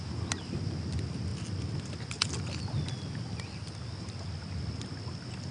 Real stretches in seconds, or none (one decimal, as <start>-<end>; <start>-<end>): 0.0-5.5

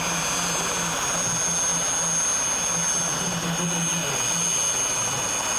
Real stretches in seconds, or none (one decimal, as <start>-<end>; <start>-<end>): 0.0-5.6

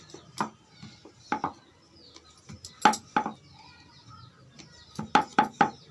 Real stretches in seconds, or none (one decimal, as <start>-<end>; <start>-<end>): 0.0-5.9

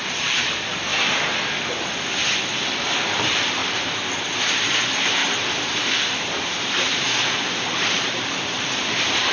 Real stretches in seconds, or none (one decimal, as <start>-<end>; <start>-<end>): 0.9-2.5; 3.6-4.2